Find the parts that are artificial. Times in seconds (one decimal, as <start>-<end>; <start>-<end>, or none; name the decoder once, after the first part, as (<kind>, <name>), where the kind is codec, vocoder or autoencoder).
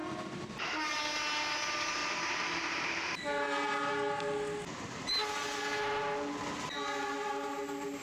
0.0-1.0 (vocoder, BigVGAN v2); 2.0-3.9